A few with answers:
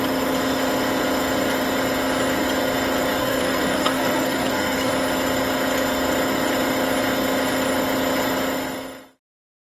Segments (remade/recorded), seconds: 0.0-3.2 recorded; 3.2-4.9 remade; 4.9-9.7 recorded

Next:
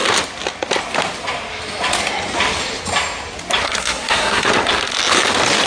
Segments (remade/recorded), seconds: 0.0-3.6 recorded; 3.6-4.5 remade; 4.5-5.7 recorded